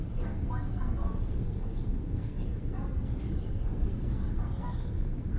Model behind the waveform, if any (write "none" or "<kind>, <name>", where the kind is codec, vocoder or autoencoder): codec, SNAC